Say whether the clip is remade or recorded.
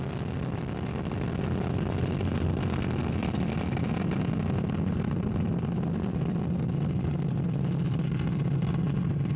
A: recorded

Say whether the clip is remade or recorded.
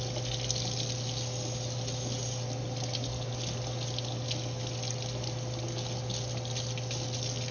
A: recorded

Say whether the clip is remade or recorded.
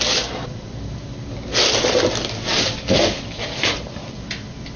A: recorded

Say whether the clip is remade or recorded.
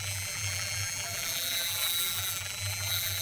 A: remade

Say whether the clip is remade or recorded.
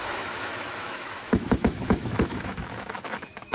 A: remade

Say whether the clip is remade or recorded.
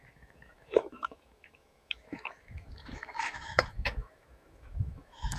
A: remade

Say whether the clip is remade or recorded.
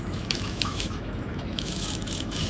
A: remade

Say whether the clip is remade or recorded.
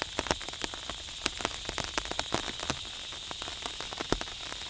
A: recorded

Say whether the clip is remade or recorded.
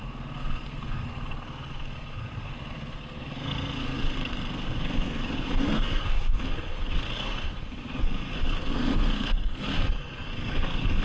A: remade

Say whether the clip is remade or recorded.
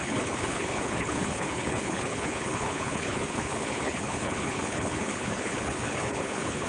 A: remade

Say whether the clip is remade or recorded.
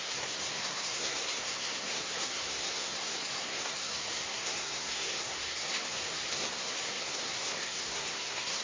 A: remade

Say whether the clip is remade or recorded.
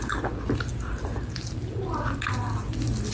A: recorded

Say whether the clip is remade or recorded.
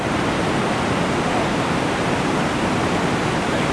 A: recorded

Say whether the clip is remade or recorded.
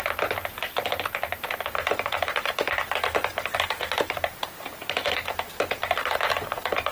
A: recorded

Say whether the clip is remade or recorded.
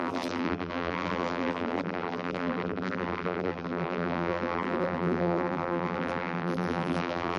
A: remade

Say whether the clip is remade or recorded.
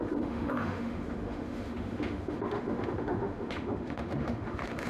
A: remade